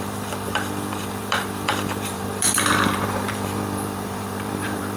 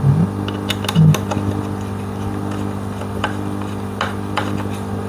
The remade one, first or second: first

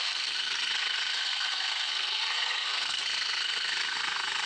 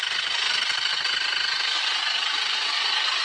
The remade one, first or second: first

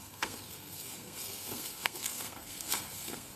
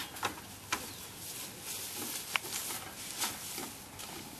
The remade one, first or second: first